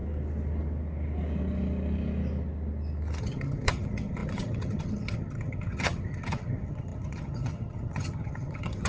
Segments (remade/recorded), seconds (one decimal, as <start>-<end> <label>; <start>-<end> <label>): 0.0-3.2 recorded; 3.2-8.9 remade